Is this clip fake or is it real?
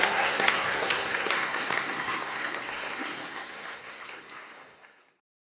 fake